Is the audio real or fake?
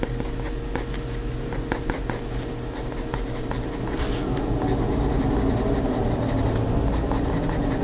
real